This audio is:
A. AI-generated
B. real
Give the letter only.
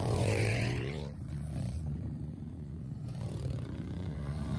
A